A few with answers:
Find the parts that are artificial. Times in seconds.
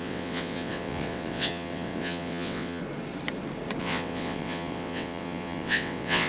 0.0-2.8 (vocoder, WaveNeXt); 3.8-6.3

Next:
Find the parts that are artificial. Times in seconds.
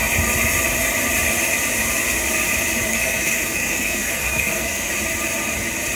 2.9-4.9 (codec, SNAC)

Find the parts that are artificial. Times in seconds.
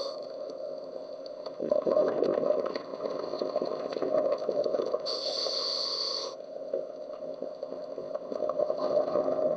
0.0-9.6 (codec, ZipCodec)